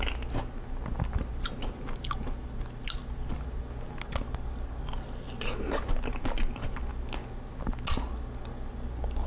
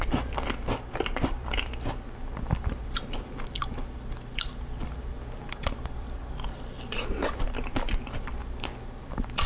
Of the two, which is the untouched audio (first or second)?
first